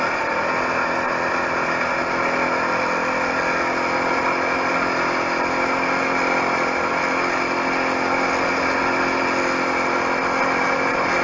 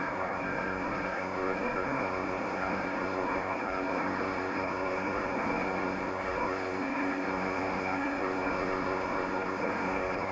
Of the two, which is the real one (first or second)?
first